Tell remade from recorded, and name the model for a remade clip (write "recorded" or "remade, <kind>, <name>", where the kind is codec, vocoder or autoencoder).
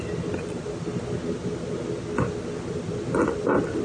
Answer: recorded